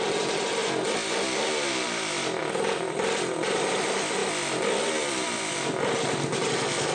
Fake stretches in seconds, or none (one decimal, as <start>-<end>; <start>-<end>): none